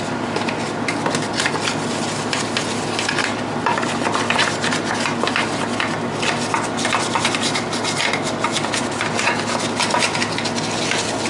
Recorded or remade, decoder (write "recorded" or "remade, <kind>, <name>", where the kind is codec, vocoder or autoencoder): recorded